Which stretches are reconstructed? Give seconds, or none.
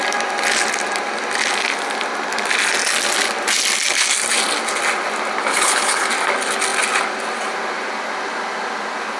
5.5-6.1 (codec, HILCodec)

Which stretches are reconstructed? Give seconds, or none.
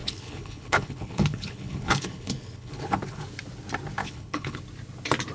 0.0-3.2 (codec, HILCodec); 4.0-4.6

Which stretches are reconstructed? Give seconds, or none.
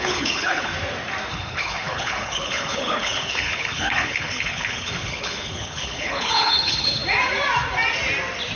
0.0-0.7 (codec, HILCodec); 1.3-7.0